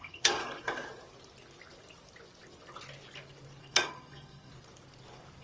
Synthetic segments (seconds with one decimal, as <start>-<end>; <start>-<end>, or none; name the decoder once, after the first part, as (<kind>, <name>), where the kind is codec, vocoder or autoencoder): 0.0-0.4 (codec, SNAC); 3.6-4.5